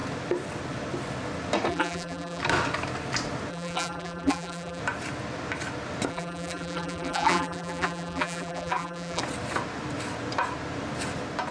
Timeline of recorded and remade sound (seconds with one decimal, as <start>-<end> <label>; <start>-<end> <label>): 0.0-1.7 recorded; 1.7-2.4 remade; 2.4-3.5 recorded; 3.5-4.8 remade; 4.8-6.1 recorded; 6.1-9.2 remade; 9.2-11.5 recorded